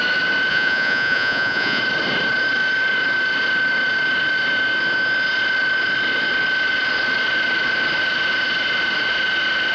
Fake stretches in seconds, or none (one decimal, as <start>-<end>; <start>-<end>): 0.5-1.8